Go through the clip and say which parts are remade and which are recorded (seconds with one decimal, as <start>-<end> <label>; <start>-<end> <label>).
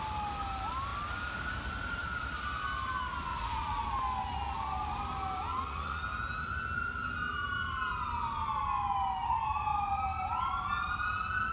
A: 0.0-3.3 recorded; 3.3-3.9 remade; 3.9-5.5 recorded; 5.5-6.0 remade; 6.0-11.5 recorded